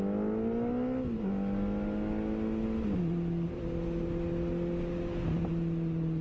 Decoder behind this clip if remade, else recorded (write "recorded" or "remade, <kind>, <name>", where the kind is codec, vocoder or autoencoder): recorded